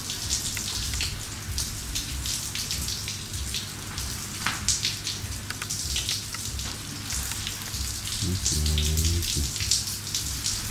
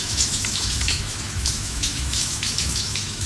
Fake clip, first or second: second